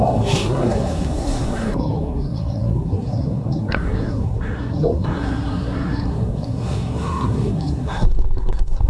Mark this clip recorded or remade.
remade